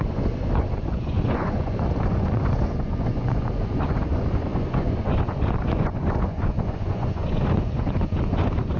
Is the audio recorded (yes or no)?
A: no